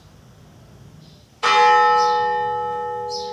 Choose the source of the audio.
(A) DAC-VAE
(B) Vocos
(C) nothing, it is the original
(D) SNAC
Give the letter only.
C